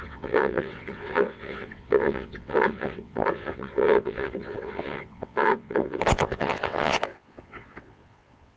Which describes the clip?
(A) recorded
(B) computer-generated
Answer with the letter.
B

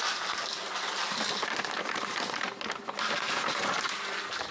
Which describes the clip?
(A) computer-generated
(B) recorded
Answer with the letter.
B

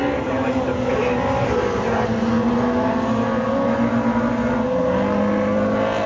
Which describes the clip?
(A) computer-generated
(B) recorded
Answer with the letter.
B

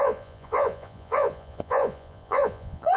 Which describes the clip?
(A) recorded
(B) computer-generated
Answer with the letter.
B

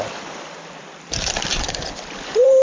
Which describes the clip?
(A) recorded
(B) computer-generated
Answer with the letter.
B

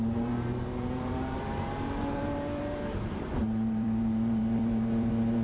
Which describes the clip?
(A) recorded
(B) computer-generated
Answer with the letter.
B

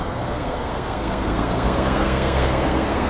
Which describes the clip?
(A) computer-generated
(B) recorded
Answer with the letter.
A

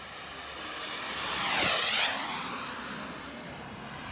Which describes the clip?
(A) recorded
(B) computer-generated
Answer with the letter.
A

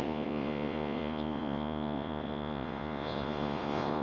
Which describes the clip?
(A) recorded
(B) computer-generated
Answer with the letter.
B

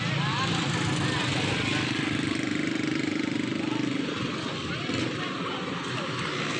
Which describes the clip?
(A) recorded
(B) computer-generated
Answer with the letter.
A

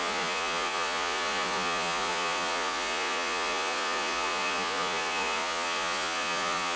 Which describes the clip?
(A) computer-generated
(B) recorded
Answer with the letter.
A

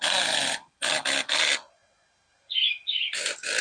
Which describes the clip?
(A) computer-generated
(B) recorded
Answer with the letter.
B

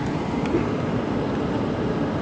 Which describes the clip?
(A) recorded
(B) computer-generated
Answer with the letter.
A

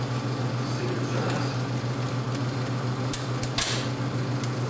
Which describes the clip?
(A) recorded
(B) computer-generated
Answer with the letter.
A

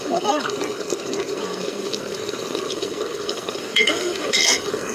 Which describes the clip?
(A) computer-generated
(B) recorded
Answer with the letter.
A